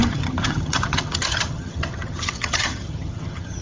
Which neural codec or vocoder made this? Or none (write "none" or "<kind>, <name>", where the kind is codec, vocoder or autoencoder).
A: vocoder, HiFi-GAN